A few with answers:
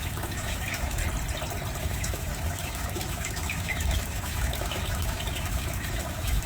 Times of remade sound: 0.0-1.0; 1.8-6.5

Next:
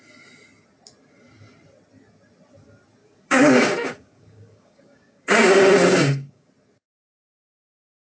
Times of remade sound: 3.0-6.5

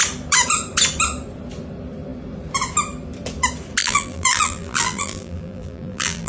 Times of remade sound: 3.8-6.3

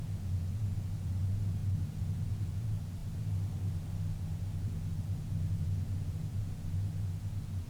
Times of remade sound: 0.0-3.0; 4.3-7.7

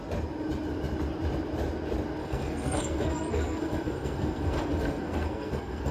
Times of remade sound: 2.2-5.9